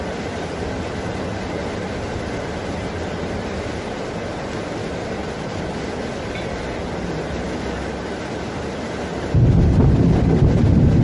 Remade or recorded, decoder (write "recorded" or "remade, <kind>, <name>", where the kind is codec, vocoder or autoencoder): recorded